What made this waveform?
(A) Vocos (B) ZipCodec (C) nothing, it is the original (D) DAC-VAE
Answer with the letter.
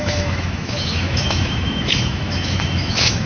D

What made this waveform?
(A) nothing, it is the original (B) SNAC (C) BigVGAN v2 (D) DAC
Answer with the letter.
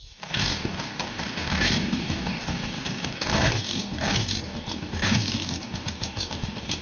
D